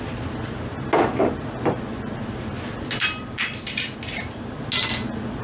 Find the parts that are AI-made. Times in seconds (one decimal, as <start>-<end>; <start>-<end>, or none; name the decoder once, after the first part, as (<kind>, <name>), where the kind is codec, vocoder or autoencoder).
none